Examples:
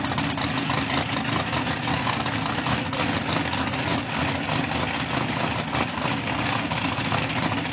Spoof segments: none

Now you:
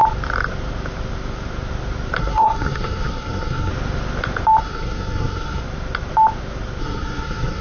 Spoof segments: 2.2-3.7 (codec, SNAC); 4.6-5.6; 6.8-7.6

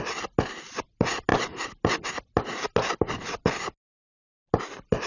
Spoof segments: none

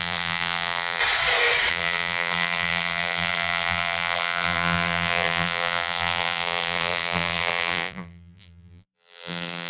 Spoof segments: 0.0-1.0 (vocoder, BigVGAN v2); 1.7-9.7

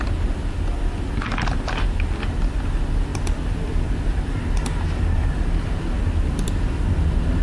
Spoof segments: none

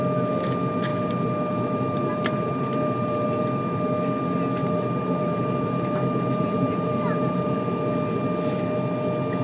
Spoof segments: 0.9-3.4 (vocoder, BigVGAN v2); 4.6-8.2